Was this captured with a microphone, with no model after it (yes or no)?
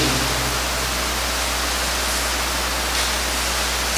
yes